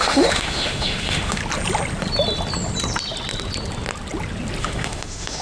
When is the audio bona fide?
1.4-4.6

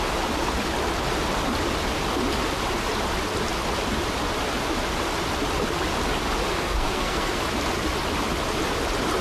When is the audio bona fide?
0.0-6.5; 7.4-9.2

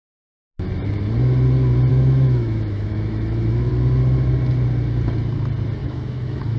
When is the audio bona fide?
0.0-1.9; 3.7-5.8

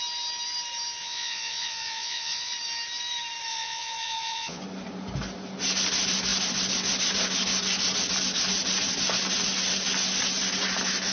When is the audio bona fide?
0.0-1.0; 2.5-3.5; 4.6-11.1

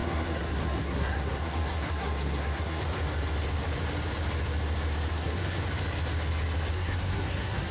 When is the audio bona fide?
2.8-5.1; 5.6-6.7

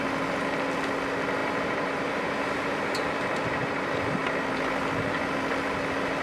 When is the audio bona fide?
0.0-1.4; 2.3-6.2